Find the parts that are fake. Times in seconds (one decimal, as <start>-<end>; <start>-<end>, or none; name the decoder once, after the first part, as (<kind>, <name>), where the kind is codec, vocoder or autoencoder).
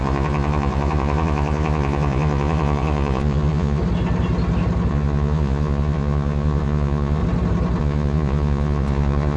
0.0-3.8 (vocoder, Vocos); 4.9-7.2; 7.8-9.4